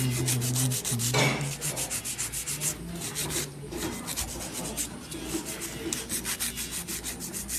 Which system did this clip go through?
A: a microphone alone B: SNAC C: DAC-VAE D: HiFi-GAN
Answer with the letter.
A